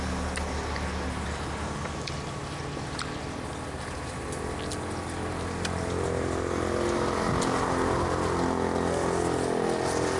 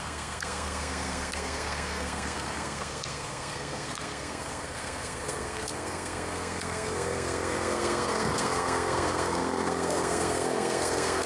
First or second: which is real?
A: first